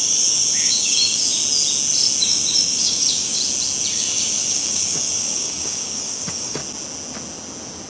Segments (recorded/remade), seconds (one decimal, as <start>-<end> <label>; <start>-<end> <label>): 0.0-1.4 remade; 1.4-2.2 recorded; 2.2-3.4 remade; 3.4-3.9 recorded; 3.9-6.6 remade; 6.6-7.9 recorded

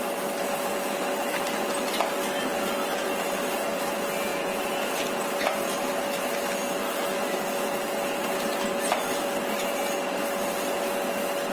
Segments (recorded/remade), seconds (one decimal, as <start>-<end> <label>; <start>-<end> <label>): 0.0-4.3 recorded; 4.3-4.9 remade; 4.9-11.5 recorded

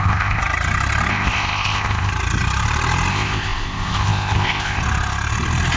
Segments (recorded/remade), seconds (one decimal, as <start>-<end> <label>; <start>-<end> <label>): 0.0-0.4 remade; 0.4-1.1 recorded; 1.1-2.1 remade; 2.1-3.1 recorded; 3.1-4.8 remade; 4.8-5.8 recorded

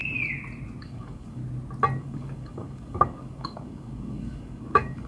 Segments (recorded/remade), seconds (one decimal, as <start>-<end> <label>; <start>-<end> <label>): 0.0-0.8 recorded; 0.8-1.4 remade; 1.4-2.0 recorded; 2.0-5.1 remade

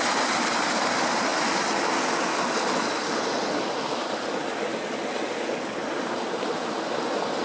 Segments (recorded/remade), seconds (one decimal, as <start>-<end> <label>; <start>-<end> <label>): 0.0-7.4 recorded